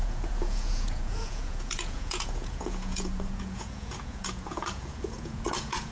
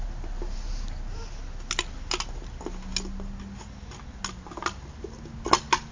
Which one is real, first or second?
second